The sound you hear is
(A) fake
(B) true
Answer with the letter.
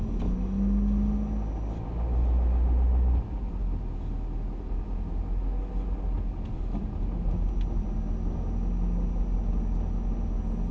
B